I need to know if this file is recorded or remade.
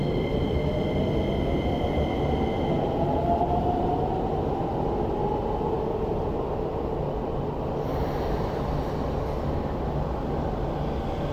recorded